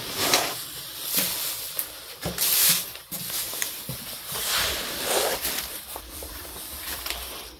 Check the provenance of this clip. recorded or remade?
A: remade